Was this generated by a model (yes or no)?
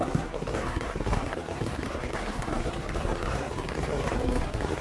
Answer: yes